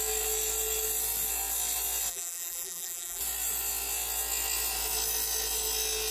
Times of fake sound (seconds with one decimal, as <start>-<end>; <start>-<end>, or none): 2.1-3.2